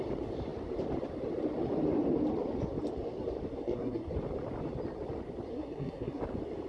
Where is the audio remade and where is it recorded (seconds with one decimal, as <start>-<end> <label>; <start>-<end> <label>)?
0.0-3.5 recorded; 3.5-4.1 remade; 4.1-5.5 recorded; 5.5-6.2 remade; 6.2-6.7 recorded